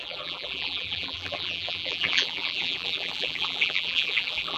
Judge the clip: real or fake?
fake